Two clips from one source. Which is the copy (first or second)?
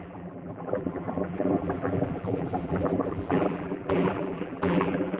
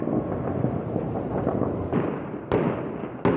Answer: first